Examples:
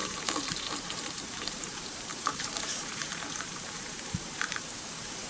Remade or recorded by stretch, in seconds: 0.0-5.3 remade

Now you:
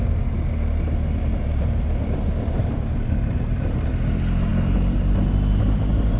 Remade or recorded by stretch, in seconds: 0.0-1.3 recorded; 1.3-3.9 remade; 3.9-6.2 recorded

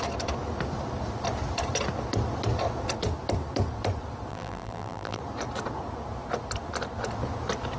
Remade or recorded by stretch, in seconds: 0.0-4.3 recorded; 4.3-5.2 remade; 5.2-7.8 recorded

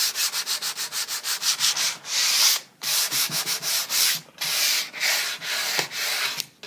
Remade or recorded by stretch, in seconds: 0.0-1.0 recorded; 1.0-4.3 remade; 4.3-6.7 recorded

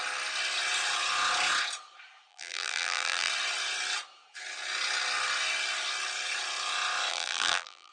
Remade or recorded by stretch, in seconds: 0.0-2.3 recorded; 2.3-3.3 remade; 3.3-7.1 recorded; 7.1-7.9 remade

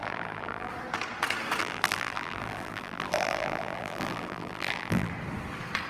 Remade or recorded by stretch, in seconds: 0.0-0.7 remade; 0.7-1.6 recorded; 1.6-5.1 remade; 5.1-5.9 recorded

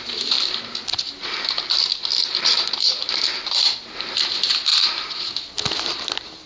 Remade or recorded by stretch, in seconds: 0.0-2.1 recorded; 2.1-4.0 remade; 4.0-4.7 recorded; 4.7-5.3 remade; 5.3-6.5 recorded

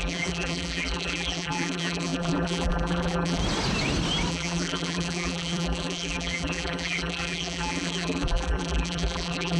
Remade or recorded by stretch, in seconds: 0.0-3.4 remade; 3.4-4.3 recorded; 4.3-9.6 remade